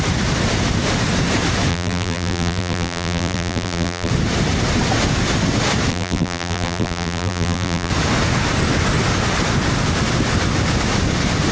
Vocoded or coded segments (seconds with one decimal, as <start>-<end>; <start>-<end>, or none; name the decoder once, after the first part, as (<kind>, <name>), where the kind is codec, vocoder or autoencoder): 1.7-4.1 (vocoder, BigVGAN v2); 5.9-7.9